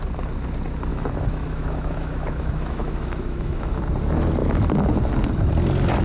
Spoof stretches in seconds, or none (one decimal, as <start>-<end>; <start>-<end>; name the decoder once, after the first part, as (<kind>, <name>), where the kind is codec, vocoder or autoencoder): 0.9-3.8 (autoencoder, DAC-VAE)